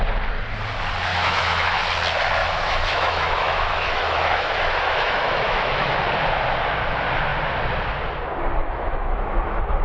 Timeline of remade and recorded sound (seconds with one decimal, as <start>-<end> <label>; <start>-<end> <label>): 0.0-1.1 recorded; 1.1-1.8 remade; 1.8-2.4 recorded; 2.4-6.0 remade; 6.0-8.6 recorded; 8.6-9.2 remade; 9.2-9.8 recorded